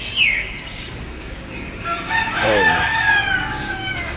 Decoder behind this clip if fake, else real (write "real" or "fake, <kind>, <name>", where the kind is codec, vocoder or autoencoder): fake, codec, DAC